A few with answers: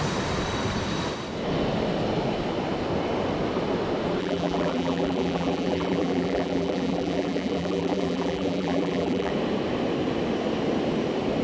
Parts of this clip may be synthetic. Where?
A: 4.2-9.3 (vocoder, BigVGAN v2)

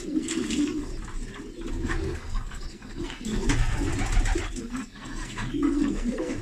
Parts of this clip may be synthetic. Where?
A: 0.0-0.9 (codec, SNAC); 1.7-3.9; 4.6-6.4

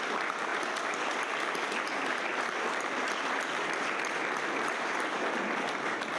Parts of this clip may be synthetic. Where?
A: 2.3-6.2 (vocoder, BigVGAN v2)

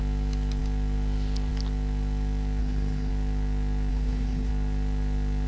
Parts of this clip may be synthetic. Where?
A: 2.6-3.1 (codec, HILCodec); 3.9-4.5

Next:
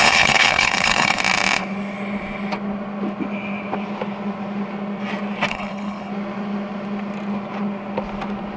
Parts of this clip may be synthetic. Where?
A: 0.0-1.2 (codec, HILCodec); 5.5-6.1

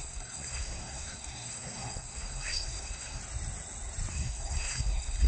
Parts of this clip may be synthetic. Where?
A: 0.0-3.2 (codec, SNAC); 4.1-5.3

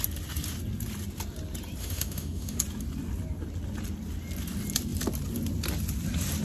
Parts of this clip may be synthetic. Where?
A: 1.8-2.6 (autoencoder, DAC-VAE)